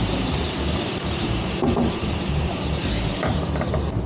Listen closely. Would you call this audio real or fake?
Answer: fake